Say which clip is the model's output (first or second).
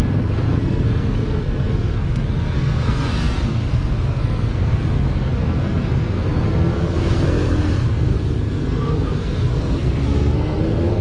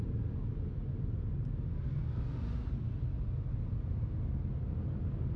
first